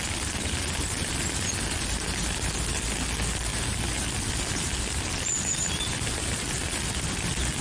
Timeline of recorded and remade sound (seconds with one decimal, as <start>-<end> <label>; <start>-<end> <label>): 0.0-7.6 recorded